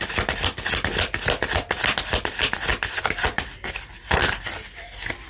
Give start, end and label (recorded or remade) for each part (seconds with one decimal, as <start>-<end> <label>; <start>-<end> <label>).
0.0-2.7 recorded; 2.7-3.9 remade; 3.9-5.3 recorded